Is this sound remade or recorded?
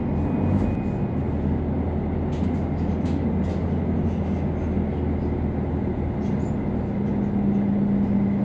recorded